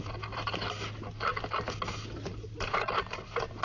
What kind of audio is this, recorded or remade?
recorded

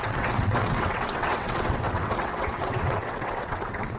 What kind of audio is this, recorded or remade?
remade